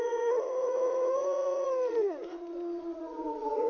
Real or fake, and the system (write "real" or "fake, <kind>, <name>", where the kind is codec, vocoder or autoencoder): fake, vocoder, Vocos